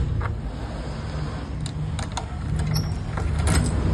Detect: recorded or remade recorded